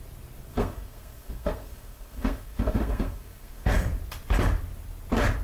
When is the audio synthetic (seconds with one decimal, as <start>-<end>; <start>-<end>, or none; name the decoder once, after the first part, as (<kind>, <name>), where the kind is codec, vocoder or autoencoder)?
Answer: 0.5-3.7 (codec, SNAC)